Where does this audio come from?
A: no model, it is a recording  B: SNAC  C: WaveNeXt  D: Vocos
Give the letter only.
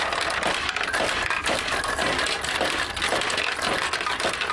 A